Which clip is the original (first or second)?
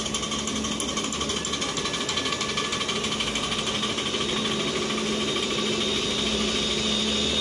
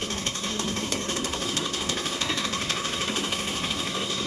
first